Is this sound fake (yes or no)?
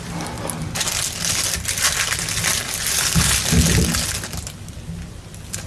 no